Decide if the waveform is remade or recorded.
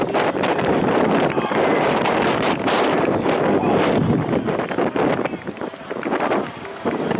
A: remade